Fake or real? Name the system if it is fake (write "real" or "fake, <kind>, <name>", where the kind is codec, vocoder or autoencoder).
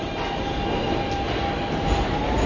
real